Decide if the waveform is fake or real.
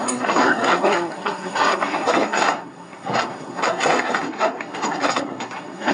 fake